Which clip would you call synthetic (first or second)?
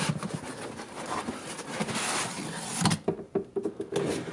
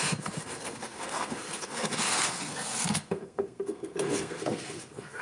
second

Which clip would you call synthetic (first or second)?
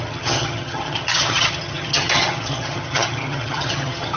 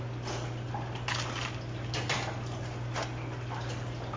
first